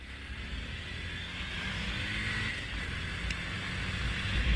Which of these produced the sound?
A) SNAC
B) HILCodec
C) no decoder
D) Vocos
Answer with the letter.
C